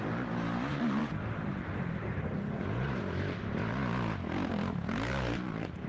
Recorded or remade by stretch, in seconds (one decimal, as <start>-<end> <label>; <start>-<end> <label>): 0.0-5.9 recorded